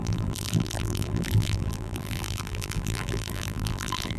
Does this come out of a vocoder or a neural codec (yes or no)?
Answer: yes